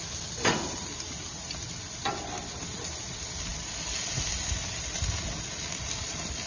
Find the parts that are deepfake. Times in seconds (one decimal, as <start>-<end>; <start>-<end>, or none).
none